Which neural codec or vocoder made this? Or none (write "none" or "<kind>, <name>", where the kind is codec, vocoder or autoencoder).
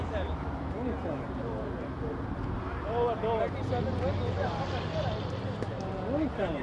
none